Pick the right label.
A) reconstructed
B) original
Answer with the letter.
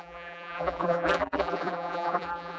A